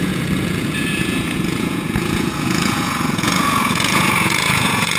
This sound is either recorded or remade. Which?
remade